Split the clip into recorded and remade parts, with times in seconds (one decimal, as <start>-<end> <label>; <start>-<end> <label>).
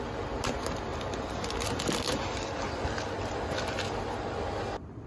0.0-0.9 recorded; 0.9-4.0 remade; 4.0-5.1 recorded